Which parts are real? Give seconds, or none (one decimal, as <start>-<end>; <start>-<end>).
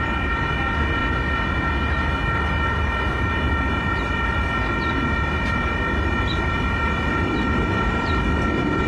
0.0-8.9